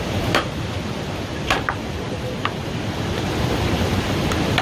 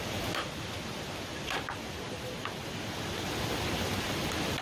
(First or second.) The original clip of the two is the second